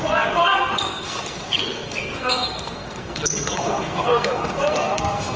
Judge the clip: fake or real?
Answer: fake